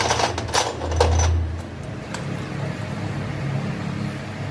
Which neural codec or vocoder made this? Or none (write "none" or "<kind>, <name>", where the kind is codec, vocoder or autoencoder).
none